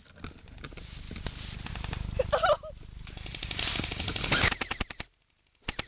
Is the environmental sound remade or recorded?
recorded